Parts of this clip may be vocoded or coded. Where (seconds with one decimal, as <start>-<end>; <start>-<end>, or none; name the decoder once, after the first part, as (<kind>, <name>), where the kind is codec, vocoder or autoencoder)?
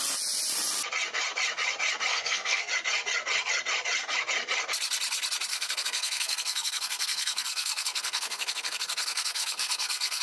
2.1-2.7 (codec, SNAC); 5.5-10.2